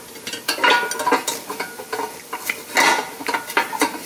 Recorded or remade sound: recorded